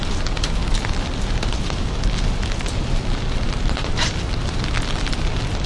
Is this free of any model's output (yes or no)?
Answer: yes